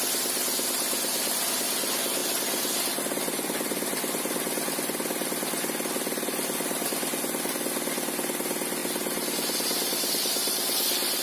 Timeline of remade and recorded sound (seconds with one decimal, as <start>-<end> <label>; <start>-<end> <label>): 0.0-11.2 recorded